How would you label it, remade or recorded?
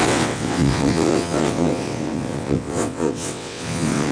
remade